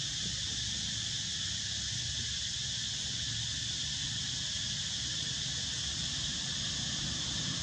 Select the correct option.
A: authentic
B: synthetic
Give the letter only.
A